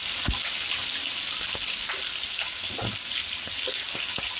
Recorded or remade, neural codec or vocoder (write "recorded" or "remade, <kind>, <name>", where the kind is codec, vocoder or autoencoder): recorded